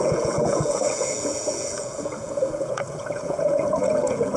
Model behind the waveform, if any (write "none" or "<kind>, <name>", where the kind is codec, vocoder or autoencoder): vocoder, Vocos